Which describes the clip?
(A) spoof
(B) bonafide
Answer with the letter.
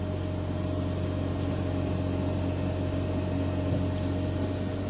B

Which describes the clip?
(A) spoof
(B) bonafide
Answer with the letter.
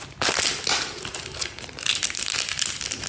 B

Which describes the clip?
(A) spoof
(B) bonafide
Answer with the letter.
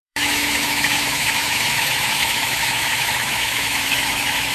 A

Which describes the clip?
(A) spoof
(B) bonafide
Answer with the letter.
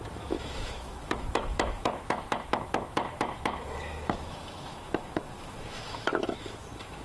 A